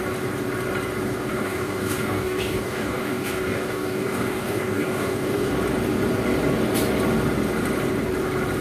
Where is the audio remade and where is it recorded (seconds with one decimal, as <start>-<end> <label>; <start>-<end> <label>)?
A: 0.0-1.1 recorded; 1.1-5.5 remade; 5.5-8.6 recorded